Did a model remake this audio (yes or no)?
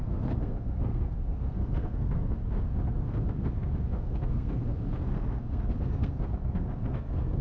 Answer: yes